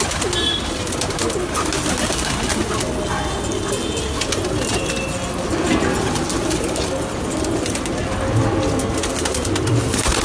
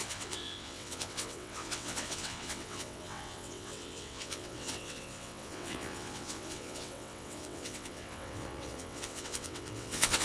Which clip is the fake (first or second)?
second